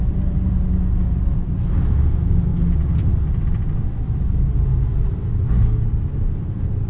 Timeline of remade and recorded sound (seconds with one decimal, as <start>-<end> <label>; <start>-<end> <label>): 0.0-6.9 recorded

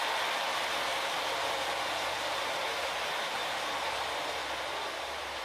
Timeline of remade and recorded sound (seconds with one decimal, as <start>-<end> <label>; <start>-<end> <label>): 0.0-0.9 recorded; 0.9-2.9 remade; 2.9-4.4 recorded; 4.4-5.4 remade

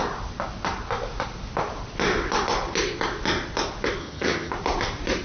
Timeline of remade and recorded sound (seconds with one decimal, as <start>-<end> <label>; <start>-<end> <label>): 0.0-4.0 recorded; 4.0-4.5 remade; 4.5-5.2 recorded